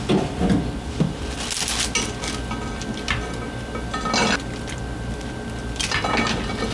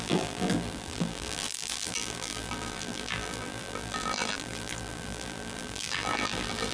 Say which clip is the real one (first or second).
first